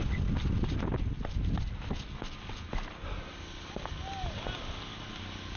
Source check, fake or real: real